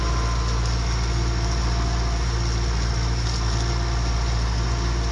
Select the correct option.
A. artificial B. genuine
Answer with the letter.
B